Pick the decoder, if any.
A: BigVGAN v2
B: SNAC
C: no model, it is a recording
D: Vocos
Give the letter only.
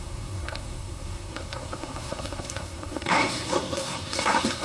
B